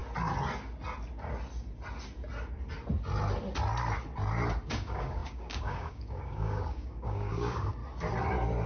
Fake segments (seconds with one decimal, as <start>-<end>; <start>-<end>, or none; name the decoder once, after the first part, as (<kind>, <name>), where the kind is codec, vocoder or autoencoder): 4.7-7.8 (codec, DAC)